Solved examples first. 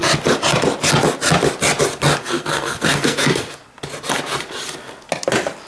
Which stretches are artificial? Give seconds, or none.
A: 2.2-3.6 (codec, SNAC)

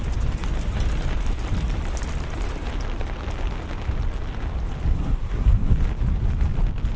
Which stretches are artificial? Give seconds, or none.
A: 4.9-5.7 (codec, SNAC)

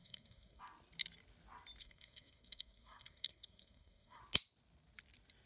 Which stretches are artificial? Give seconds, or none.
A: 0.0-0.6 (codec, SNAC); 1.8-4.2

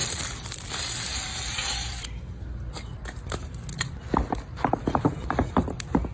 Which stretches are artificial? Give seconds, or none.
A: none

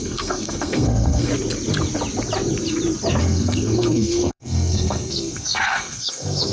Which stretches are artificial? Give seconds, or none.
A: 0.0-1.3 (codec, SNAC); 3.2-6.5